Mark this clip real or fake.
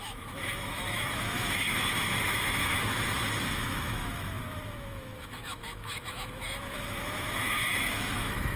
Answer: fake